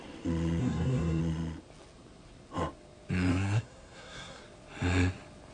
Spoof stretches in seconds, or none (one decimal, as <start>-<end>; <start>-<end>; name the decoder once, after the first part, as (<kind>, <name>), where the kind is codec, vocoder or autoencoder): 0.6-1.2 (codec, SNAC); 3.3-4.4